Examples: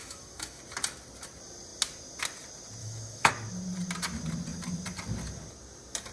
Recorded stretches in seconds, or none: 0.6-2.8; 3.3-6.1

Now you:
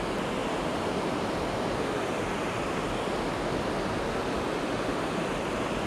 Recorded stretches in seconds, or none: 0.0-5.9

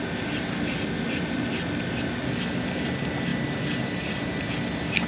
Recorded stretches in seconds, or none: 0.0-5.1

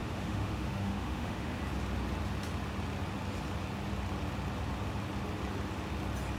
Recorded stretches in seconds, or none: 1.6-6.4